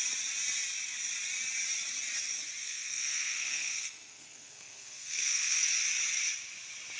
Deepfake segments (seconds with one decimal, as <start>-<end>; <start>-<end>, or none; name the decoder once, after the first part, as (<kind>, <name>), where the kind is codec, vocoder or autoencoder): 2.6-5.6 (codec, SNAC)